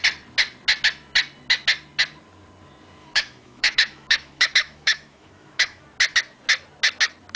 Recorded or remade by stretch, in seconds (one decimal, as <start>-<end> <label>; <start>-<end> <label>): 0.0-3.0 recorded; 3.0-5.8 remade; 5.8-7.4 recorded